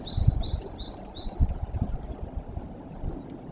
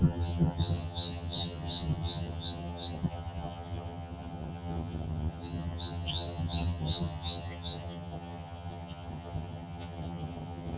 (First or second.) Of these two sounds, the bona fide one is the first